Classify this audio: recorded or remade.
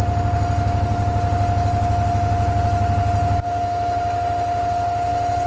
recorded